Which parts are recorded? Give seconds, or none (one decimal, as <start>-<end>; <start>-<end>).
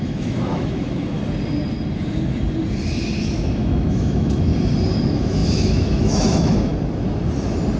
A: 1.2-3.2; 4.5-5.0; 6.7-7.8